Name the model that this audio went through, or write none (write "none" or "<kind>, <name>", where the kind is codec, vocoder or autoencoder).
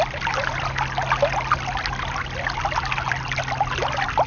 none